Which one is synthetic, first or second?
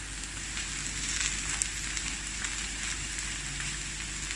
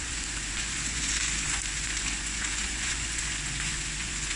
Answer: second